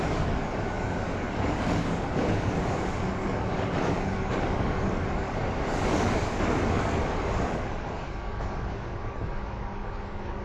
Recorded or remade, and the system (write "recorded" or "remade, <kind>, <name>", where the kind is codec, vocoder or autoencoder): remade, codec, DAC